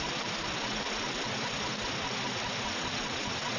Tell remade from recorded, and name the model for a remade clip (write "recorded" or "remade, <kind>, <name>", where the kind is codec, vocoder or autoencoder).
recorded